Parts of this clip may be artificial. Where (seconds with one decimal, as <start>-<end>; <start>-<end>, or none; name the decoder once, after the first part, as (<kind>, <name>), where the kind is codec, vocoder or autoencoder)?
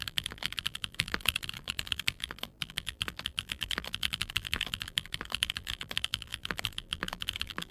0.0-7.7 (vocoder, BigVGAN v2)